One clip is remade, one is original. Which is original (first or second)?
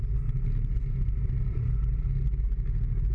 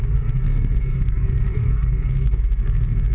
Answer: first